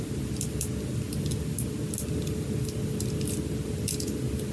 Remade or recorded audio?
recorded